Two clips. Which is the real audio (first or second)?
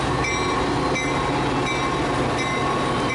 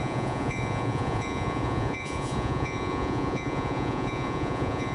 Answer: first